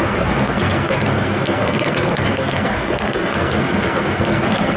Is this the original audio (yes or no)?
no